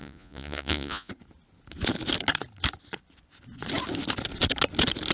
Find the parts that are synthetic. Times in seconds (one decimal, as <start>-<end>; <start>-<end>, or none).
0.0-1.1